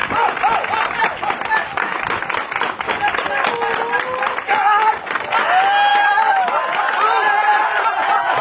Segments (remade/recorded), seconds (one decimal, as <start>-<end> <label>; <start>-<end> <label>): 0.0-8.4 recorded